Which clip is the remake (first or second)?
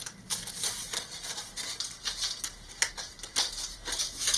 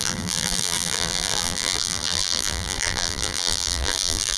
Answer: second